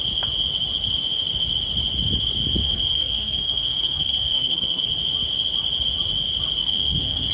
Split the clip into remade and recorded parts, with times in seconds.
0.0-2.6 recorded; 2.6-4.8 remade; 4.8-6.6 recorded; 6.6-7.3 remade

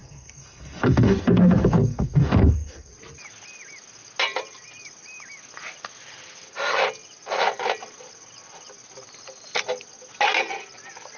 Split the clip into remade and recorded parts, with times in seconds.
0.0-2.9 remade; 2.9-11.2 recorded